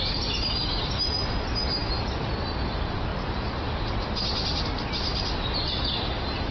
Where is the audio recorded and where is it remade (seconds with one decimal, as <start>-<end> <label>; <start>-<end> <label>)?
0.0-3.1 recorded; 3.1-3.8 remade; 3.8-5.1 recorded; 5.1-5.8 remade; 5.8-6.5 recorded